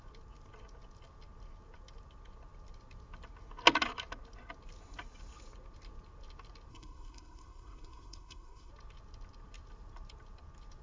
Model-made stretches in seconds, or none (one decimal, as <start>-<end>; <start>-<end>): 6.7-8.7